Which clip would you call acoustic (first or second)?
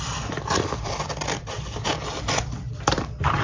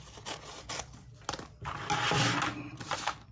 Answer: second